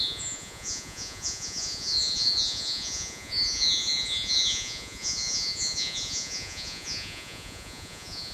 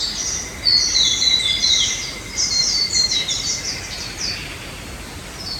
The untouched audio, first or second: second